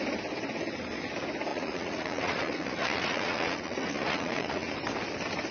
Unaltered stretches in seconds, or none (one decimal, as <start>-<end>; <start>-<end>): 0.0-1.5; 4.7-5.5